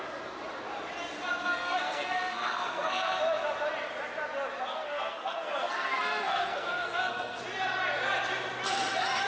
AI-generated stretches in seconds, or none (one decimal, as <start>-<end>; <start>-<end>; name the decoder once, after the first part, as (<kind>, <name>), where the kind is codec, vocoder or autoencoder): 1.4-3.2 (codec, SNAC); 4.7-7.4